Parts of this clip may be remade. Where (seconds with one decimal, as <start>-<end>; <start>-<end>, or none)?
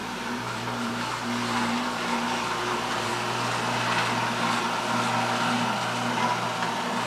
0.0-3.1